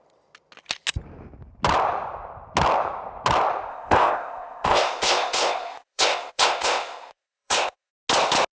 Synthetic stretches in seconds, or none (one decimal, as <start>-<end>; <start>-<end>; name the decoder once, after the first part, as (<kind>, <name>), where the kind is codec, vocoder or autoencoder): 3.7-7.9 (codec, ZipCodec)